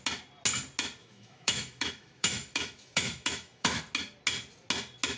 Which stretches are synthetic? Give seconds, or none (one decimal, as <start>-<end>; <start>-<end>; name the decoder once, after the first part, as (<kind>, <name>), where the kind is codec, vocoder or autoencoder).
1.0-3.8 (autoencoder, DAC-VAE)